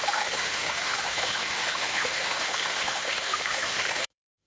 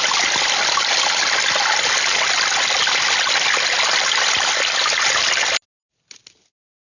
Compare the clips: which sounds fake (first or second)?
first